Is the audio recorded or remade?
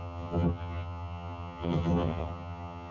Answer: remade